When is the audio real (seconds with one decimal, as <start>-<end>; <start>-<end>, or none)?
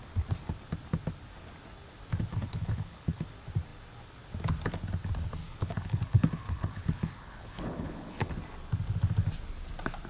0.0-2.3; 3.3-5.4; 8.3-10.1